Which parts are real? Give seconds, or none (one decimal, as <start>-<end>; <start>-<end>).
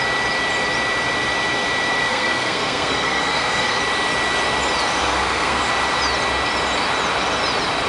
0.0-2.0; 3.8-5.0; 5.6-7.9